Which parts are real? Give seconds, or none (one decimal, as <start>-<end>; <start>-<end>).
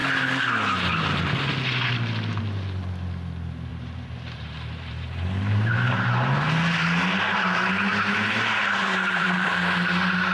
0.0-3.7; 5.7-8.8; 9.6-10.3